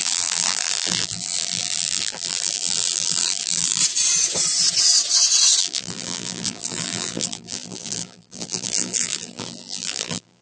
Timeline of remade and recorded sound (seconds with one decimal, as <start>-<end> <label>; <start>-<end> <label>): 0.0-3.8 remade; 3.8-5.6 recorded; 5.6-10.4 remade